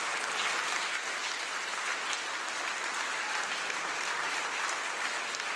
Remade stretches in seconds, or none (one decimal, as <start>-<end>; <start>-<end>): none